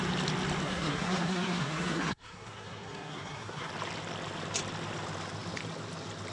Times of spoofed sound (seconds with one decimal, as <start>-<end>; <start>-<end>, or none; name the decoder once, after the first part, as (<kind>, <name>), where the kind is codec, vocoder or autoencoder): 0.6-3.7 (codec, SNAC)